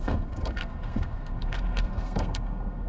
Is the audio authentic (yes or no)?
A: no